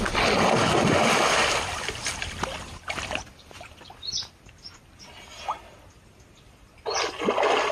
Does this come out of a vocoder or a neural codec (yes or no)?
no